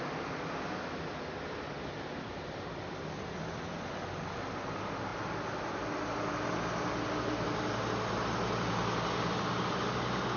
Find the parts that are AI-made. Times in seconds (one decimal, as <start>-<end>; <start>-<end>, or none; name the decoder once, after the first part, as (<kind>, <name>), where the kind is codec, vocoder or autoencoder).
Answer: none